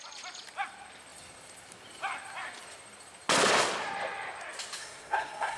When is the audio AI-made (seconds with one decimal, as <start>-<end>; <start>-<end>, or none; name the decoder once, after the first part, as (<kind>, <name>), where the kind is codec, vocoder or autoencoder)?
4.8-5.6 (codec, SNAC)